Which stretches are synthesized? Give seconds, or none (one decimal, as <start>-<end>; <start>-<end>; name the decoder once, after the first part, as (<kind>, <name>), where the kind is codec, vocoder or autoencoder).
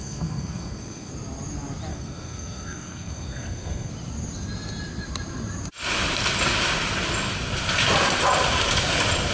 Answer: 0.0-1.1 (codec, SNAC); 1.9-3.9